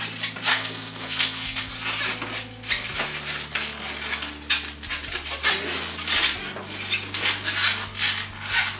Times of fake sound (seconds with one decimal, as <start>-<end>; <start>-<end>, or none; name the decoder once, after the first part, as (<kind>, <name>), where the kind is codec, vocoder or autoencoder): 0.5-1.7 (codec, SNAC)